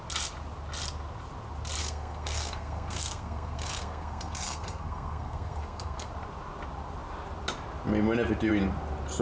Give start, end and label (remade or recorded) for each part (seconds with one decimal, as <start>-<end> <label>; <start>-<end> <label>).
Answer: 0.0-1.8 recorded; 1.8-6.1 remade; 6.1-9.2 recorded